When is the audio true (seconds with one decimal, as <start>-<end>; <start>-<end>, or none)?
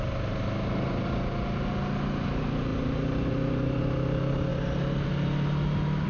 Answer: 0.0-6.1